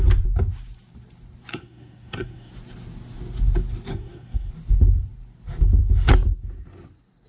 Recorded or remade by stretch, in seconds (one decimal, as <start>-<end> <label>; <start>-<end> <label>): 0.0-1.5 recorded; 1.5-2.5 remade; 2.5-3.9 recorded; 3.9-4.5 remade; 4.5-7.3 recorded